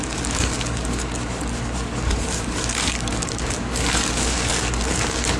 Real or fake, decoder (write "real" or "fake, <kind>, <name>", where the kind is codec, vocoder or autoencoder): fake, codec, DAC